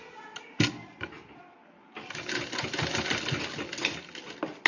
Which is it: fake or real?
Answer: real